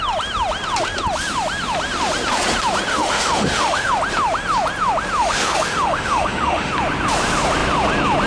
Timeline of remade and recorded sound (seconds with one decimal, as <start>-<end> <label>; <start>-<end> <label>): 0.0-2.9 recorded; 2.9-3.9 remade; 3.9-5.2 recorded; 5.2-6.7 remade; 6.7-8.3 recorded